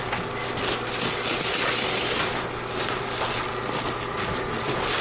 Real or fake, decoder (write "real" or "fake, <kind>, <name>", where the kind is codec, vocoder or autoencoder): real